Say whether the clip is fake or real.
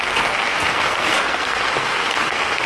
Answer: fake